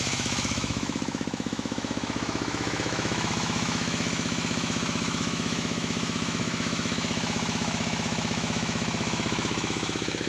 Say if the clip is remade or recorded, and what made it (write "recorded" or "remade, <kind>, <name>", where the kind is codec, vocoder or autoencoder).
remade, autoencoder, DAC-VAE